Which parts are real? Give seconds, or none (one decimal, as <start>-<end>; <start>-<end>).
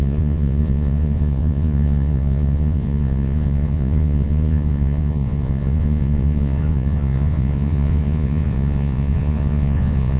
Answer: none